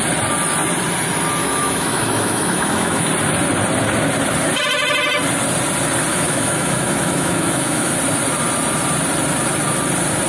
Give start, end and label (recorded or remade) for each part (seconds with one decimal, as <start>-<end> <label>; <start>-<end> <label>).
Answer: 0.0-1.4 recorded; 1.4-3.1 remade; 3.1-6.1 recorded; 6.1-7.9 remade; 7.9-10.3 recorded